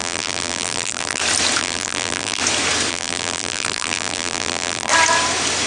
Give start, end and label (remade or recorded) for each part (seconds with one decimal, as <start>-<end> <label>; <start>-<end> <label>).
0.0-1.2 remade; 1.2-1.6 recorded; 1.6-2.4 remade; 2.4-2.9 recorded; 2.9-4.9 remade; 4.9-5.7 recorded